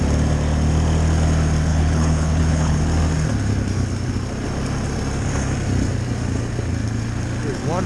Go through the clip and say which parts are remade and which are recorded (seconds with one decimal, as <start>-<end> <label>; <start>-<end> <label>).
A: 0.0-1.7 recorded; 1.7-2.8 remade; 2.8-7.9 recorded

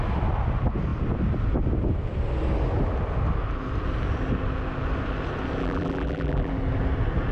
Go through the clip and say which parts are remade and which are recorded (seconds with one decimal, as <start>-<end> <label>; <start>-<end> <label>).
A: 0.0-5.6 recorded; 5.6-6.5 remade; 6.5-7.3 recorded

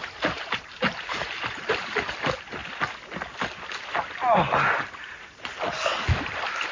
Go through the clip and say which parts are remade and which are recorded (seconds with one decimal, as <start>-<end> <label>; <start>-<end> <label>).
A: 0.0-1.7 remade; 1.7-6.7 recorded